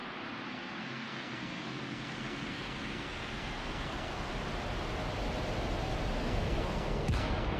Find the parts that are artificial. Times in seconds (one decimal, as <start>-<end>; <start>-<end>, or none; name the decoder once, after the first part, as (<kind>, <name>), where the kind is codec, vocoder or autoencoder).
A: 0.5-4.3 (codec, SNAC); 6.2-7.6